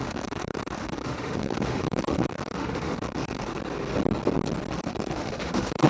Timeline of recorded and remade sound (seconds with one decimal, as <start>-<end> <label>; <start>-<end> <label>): 0.0-3.6 remade; 3.6-4.7 recorded; 4.7-5.9 remade